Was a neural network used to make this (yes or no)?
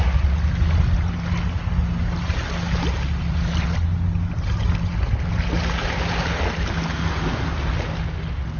no